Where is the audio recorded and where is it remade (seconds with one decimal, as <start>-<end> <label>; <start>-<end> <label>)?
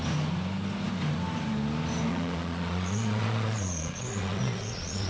0.0-2.1 recorded; 2.1-5.1 remade